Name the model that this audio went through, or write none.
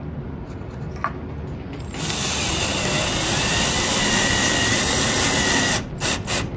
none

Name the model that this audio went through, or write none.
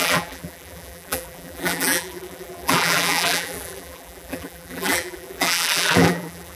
vocoder, BigVGAN v2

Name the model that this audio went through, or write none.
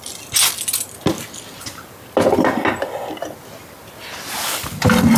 none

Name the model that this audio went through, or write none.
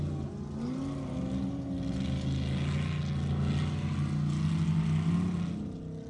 none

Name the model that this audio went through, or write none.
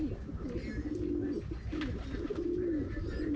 none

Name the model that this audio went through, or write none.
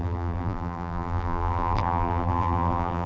vocoder, BigVGAN v2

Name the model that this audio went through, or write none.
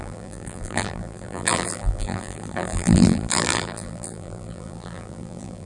vocoder, BigVGAN v2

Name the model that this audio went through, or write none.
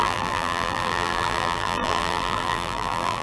vocoder, BigVGAN v2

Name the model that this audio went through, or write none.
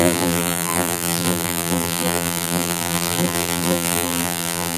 vocoder, BigVGAN v2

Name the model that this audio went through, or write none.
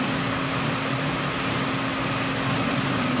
none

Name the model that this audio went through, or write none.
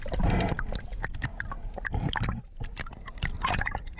none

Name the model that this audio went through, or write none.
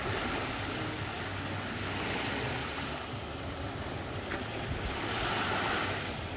none